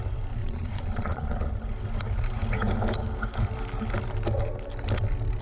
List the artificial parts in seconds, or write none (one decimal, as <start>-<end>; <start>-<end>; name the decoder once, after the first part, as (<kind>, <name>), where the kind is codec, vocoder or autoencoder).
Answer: 0.4-1.5 (vocoder, Vocos)